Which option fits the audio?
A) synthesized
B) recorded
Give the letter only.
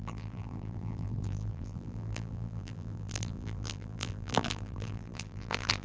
A